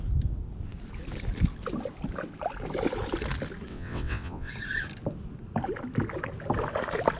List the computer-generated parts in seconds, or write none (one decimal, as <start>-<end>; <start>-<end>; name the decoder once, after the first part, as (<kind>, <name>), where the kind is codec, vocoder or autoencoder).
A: 3.7-4.5 (vocoder, WaveNeXt)